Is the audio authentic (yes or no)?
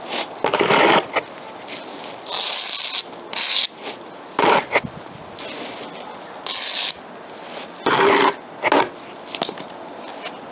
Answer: yes